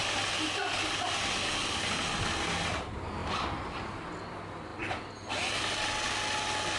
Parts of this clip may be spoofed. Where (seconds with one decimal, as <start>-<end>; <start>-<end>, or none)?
none